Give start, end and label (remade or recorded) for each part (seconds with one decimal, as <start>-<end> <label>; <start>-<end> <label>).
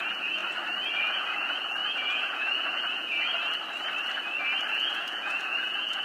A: 0.0-0.4 remade; 0.4-1.0 recorded; 1.0-3.3 remade; 3.3-4.7 recorded; 4.7-6.0 remade